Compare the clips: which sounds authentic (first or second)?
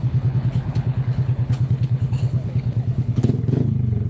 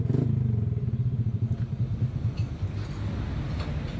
second